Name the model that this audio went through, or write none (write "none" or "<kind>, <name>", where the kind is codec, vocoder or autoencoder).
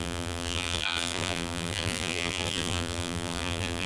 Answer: vocoder, BigVGAN v2